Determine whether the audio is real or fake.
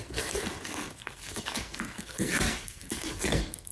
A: fake